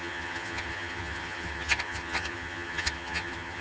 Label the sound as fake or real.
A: fake